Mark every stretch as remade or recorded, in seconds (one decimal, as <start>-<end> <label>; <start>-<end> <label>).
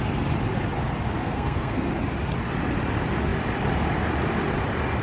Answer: 0.0-1.2 recorded; 1.2-1.9 remade; 1.9-5.0 recorded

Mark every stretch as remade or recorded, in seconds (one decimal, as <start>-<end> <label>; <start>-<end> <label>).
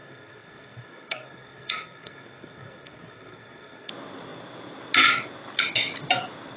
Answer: 0.0-3.9 remade; 3.9-6.6 recorded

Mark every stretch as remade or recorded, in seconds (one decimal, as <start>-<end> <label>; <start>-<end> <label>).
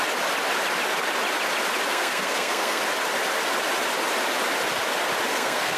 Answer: 0.0-1.9 recorded; 1.9-2.8 remade; 2.8-5.3 recorded; 5.3-5.8 remade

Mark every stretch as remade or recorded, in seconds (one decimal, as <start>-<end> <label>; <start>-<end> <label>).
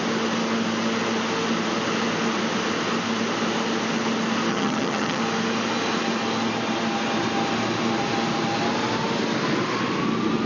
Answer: 0.0-4.5 recorded; 4.5-5.2 remade; 5.2-10.5 recorded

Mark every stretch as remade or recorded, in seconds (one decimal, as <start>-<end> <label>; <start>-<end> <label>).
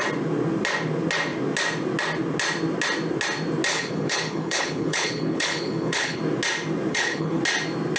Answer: 0.0-3.7 recorded; 3.7-6.2 remade; 6.2-6.9 recorded; 6.9-7.4 remade; 7.4-8.0 recorded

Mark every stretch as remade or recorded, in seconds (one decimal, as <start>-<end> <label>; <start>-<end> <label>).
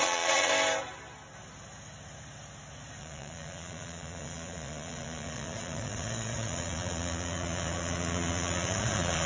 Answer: 0.0-0.5 remade; 0.5-3.0 recorded; 3.0-9.3 remade